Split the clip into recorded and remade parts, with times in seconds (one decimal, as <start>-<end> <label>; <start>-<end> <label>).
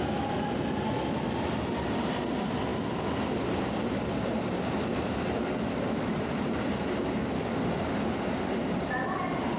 0.0-9.6 recorded